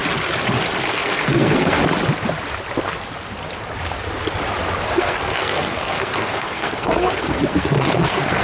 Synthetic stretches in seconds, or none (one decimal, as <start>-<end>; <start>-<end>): 0.9-1.8; 4.9-8.4